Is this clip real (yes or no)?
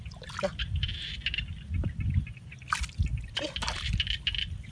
no